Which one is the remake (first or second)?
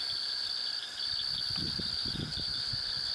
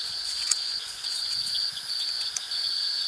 second